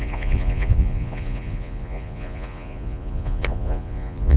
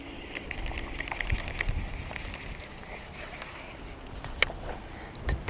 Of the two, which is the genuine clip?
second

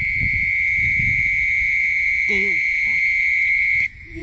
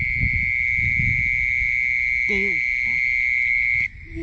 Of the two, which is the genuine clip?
second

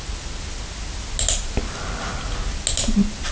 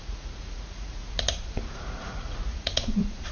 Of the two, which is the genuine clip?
first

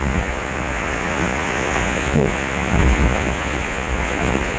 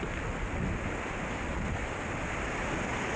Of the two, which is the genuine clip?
second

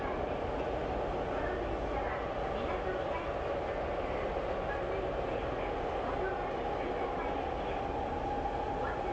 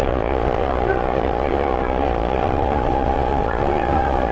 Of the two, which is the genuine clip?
first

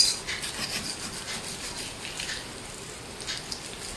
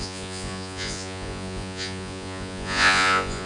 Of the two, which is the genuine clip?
first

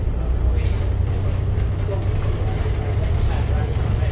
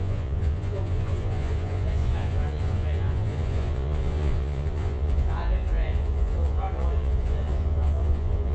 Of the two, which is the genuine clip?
first